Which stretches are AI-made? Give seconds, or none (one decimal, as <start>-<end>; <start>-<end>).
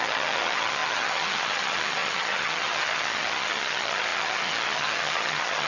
0.0-5.7